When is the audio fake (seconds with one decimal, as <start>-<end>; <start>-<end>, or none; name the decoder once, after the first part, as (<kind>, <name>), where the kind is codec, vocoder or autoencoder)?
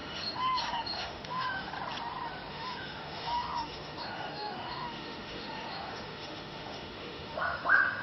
0.0-1.7 (autoencoder, DAC-VAE); 2.5-8.0